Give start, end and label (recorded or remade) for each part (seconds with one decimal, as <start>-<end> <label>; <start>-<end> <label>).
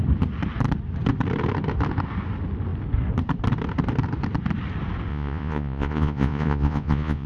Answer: 0.0-5.1 recorded; 5.1-7.3 remade